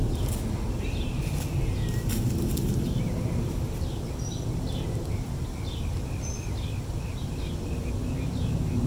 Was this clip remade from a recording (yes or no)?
no